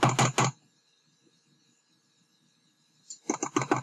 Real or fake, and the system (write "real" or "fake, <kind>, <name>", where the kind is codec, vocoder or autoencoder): real